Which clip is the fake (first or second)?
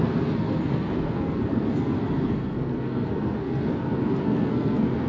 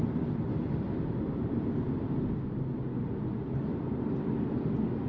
first